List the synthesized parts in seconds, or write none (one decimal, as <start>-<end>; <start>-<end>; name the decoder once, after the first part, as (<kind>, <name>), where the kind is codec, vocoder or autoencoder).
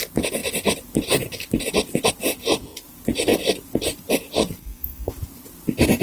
none